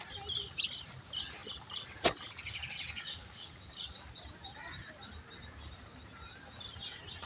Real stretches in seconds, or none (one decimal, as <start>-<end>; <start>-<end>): 0.0-7.3